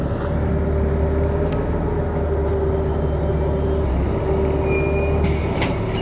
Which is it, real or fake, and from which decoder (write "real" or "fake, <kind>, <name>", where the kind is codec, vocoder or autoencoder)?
real